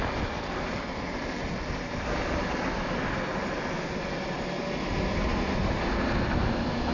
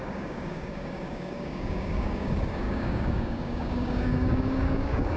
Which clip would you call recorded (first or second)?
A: first